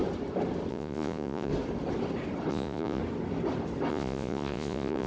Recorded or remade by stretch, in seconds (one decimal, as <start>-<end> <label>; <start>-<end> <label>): 0.0-0.7 recorded; 0.7-1.5 remade; 1.5-2.5 recorded; 2.5-3.0 remade; 3.0-3.9 recorded; 3.9-5.1 remade